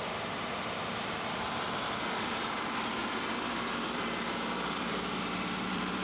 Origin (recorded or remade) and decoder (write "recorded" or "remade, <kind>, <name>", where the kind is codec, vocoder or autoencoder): remade, vocoder, BigVGAN v2